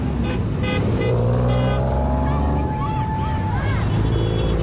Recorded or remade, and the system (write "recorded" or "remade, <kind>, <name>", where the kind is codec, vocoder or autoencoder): recorded